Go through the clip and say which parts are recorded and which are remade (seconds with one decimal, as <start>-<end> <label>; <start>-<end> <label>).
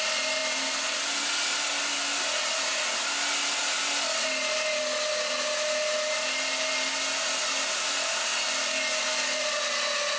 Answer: 0.0-10.2 recorded